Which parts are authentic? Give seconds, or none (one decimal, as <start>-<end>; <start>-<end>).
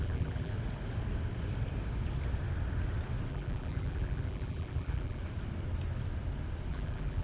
0.5-3.3; 5.2-6.7